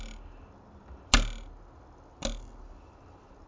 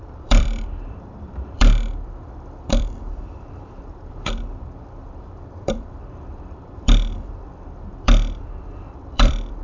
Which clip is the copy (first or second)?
second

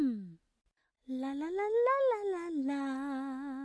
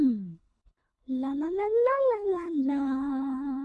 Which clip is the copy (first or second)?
second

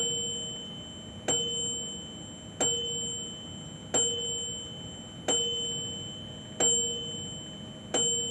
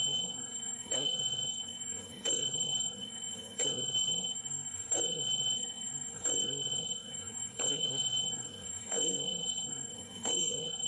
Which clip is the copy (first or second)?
second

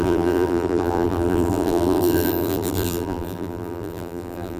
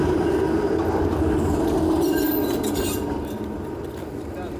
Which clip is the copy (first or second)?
first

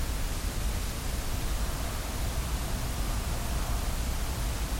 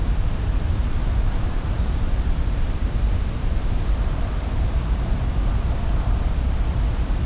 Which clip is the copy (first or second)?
second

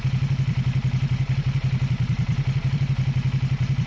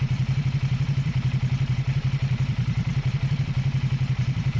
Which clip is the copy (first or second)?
second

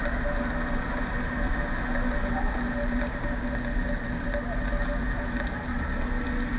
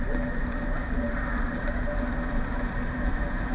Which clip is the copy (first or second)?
second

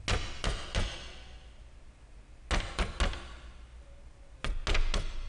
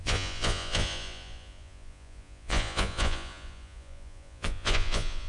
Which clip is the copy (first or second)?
second